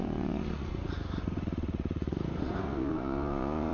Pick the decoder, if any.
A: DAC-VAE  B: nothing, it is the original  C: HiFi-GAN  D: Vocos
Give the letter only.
D